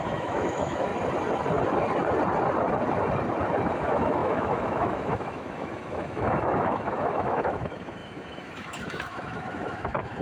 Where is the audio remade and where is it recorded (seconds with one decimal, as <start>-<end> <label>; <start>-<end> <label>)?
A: 0.0-0.9 remade; 0.9-3.7 recorded; 3.7-10.2 remade